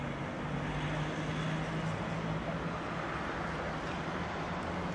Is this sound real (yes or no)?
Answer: yes